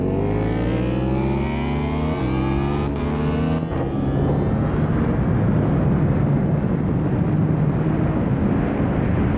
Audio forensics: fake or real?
real